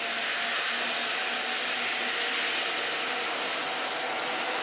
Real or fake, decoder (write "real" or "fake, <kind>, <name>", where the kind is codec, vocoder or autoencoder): real